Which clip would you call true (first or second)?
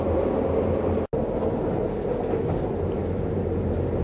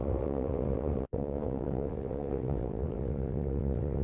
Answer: first